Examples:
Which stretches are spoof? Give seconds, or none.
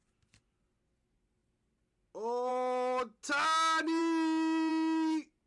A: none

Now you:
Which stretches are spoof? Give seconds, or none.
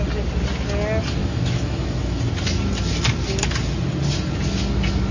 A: 1.2-2.2 (autoencoder, DAC-VAE)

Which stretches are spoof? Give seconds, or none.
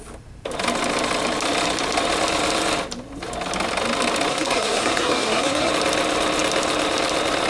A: 4.3-5.7 (codec, SNAC)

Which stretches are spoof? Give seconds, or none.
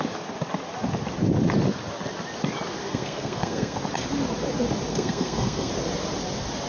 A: 2.8-3.8 (codec, SNAC); 4.9-5.7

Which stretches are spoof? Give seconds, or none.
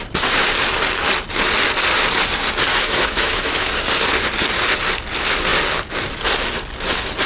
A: 2.7-3.7 (autoencoder, DAC-VAE)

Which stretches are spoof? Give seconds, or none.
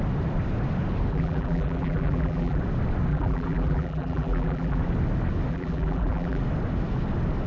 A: 1.1-2.6 (vocoder, BigVGAN v2); 3.1-4.8; 5.5-6.4